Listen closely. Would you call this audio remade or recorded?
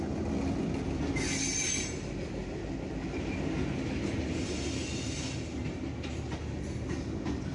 recorded